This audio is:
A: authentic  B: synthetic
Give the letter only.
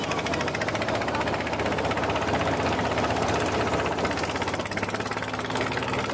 A